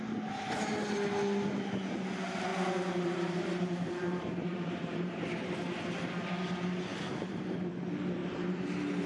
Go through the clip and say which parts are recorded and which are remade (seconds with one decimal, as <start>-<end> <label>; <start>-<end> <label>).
0.0-2.5 recorded; 2.5-5.5 remade; 5.5-6.9 recorded; 6.9-7.7 remade; 7.7-8.2 recorded; 8.2-9.1 remade